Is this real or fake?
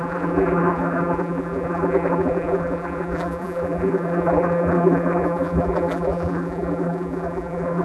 fake